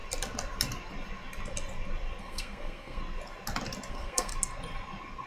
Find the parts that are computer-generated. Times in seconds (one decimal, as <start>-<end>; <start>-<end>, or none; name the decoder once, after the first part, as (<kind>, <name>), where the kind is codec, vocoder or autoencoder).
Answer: 2.2-3.0 (codec, SNAC); 3.9-4.3